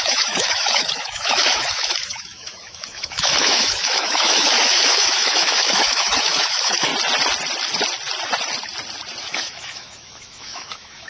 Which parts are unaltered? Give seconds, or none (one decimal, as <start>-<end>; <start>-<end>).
6.9-9.2